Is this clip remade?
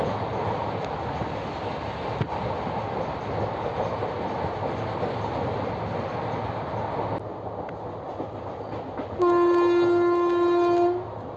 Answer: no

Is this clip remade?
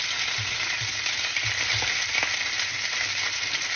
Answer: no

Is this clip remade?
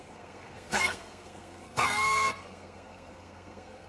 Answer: yes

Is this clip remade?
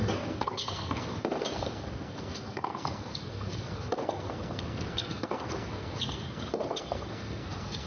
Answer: yes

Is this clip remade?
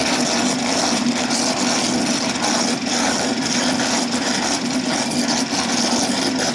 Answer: no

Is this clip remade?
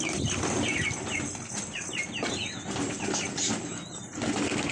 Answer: no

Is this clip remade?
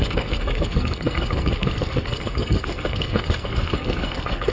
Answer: yes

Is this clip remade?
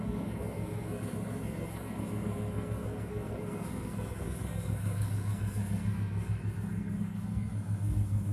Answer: yes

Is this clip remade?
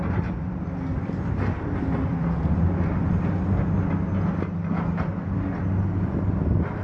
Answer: no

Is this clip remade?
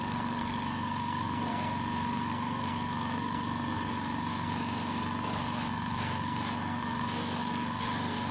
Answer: yes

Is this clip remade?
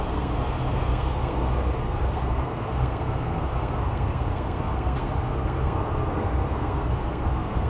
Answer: yes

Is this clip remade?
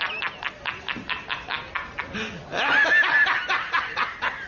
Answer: no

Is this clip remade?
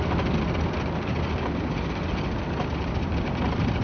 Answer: no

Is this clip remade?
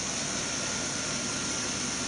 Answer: no